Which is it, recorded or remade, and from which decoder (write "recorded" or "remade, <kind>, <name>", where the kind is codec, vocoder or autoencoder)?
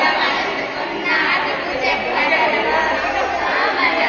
recorded